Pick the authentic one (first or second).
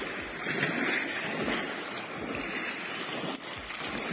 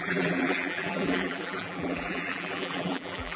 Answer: first